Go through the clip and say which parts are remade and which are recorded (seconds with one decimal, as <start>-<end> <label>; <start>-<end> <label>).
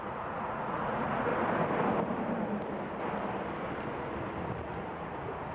0.0-1.3 remade; 1.3-4.6 recorded; 4.6-5.5 remade